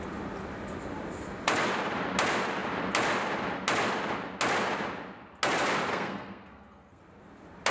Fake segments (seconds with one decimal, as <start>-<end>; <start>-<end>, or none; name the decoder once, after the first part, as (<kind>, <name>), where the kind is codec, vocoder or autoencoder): 5.9-7.0 (codec, SNAC)

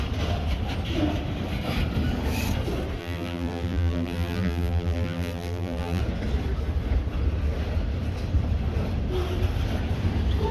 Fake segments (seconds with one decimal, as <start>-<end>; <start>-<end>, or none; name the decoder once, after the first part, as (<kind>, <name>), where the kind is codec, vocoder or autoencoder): 3.0-6.0 (vocoder, BigVGAN v2)